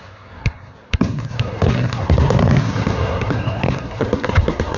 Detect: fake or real fake